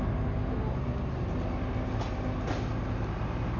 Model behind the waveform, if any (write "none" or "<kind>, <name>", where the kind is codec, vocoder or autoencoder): none